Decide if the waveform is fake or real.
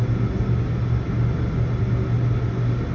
real